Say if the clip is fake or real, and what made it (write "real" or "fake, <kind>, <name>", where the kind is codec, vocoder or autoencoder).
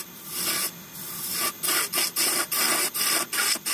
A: fake, vocoder, BigVGAN v2